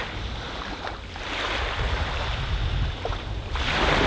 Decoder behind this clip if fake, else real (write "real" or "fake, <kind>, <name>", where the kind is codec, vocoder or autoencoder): real